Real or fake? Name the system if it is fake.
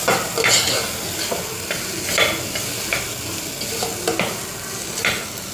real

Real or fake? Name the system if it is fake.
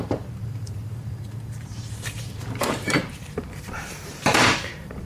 fake, vocoder, BigVGAN v2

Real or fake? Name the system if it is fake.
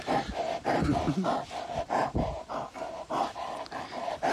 fake, vocoder, BigVGAN v2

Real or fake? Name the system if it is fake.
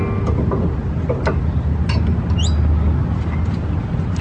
real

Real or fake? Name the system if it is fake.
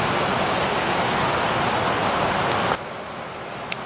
real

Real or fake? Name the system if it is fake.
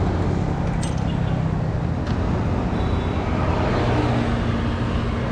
real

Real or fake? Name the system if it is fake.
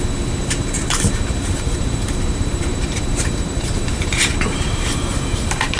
fake, vocoder, BigVGAN v2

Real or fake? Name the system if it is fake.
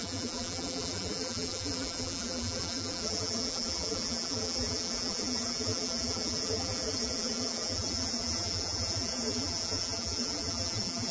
fake, vocoder, BigVGAN v2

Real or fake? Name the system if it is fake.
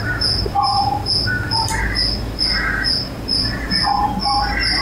real